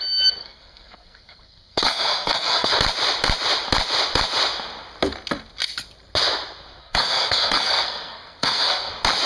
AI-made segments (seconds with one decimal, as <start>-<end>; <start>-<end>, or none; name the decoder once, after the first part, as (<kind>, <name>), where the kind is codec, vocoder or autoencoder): 0.4-2.7 (codec, SNAC); 6.8-8.9